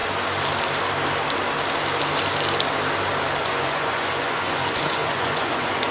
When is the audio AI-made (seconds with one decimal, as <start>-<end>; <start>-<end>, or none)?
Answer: 3.4-5.9